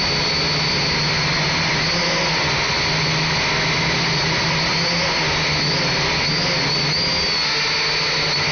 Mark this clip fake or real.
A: real